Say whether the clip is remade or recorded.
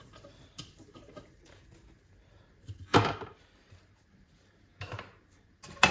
remade